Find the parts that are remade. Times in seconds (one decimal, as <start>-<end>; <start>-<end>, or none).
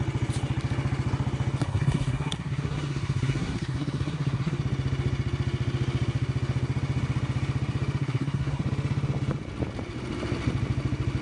1.6-4.6; 8.0-8.6